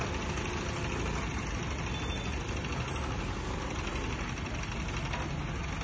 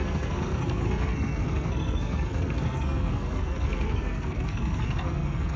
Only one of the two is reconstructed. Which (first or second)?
second